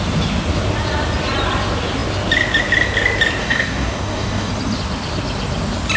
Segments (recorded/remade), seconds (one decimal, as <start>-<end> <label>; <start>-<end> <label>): 0.0-3.4 recorded; 3.4-4.5 remade; 4.5-6.0 recorded